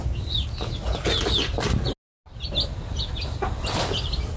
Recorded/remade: recorded